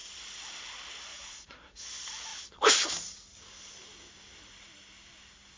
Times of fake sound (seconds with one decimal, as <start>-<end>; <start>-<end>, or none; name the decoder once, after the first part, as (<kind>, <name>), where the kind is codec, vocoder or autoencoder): 1.1-1.8 (vocoder, Vocos)